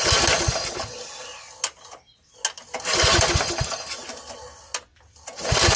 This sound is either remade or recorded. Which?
recorded